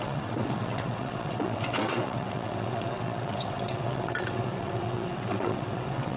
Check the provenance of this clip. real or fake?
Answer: fake